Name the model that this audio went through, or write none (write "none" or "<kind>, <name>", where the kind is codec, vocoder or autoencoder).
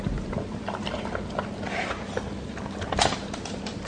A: none